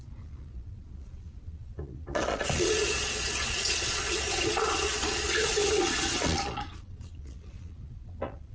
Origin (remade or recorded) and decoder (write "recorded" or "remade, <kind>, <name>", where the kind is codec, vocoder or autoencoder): remade, vocoder, Vocos